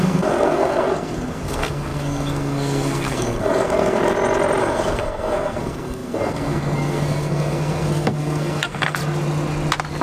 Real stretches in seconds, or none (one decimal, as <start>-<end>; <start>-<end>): 4.0-4.6; 9.0-10.0